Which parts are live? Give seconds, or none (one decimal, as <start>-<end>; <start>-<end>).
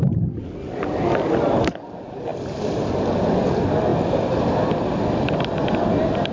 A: 0.0-6.3